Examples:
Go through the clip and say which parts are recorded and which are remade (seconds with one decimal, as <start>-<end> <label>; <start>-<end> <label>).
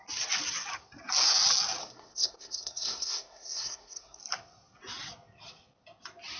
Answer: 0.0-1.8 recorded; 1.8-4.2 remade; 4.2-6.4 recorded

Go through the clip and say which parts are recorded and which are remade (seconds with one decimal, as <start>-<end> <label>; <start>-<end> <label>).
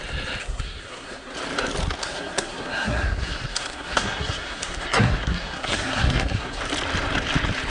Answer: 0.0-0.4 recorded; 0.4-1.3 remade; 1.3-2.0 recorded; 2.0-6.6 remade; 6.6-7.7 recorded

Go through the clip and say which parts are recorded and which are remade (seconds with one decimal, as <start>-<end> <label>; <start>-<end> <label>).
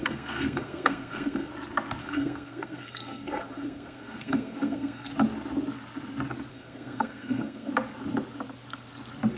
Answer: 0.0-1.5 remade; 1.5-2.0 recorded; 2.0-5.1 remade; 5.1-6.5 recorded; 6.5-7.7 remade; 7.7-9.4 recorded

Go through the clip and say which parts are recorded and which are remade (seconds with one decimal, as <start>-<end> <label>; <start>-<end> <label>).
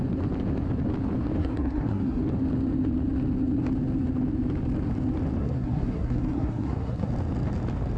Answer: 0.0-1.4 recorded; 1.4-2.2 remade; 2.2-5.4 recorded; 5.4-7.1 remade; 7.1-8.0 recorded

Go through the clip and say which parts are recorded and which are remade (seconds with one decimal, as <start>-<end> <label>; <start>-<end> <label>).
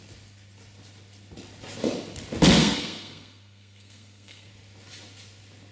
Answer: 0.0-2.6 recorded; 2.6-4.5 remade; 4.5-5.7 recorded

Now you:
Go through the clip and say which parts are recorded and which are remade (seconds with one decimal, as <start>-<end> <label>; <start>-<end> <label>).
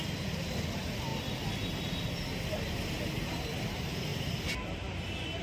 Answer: 0.0-5.4 recorded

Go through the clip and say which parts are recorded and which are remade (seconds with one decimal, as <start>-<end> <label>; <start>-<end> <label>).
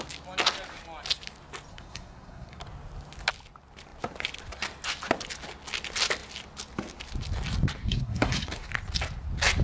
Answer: 0.0-1.7 recorded; 1.7-2.6 remade; 2.6-7.8 recorded; 7.8-8.7 remade; 8.7-9.6 recorded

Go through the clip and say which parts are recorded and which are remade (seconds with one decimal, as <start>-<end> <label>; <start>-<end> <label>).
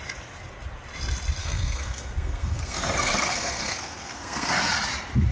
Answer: 0.0-1.4 recorded; 1.4-4.6 remade; 4.6-5.3 recorded